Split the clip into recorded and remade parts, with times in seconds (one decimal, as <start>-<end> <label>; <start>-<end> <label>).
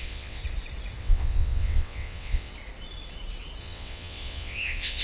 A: 0.0-0.4 remade; 0.4-1.0 recorded; 1.0-2.5 remade; 2.5-3.6 recorded; 3.6-5.0 remade